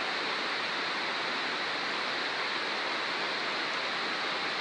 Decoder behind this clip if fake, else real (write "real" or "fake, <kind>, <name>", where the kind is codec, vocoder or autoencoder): real